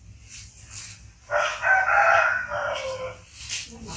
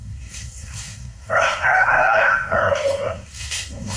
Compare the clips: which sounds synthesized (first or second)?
second